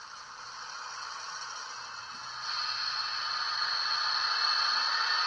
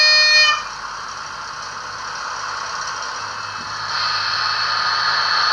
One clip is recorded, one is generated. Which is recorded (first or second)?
second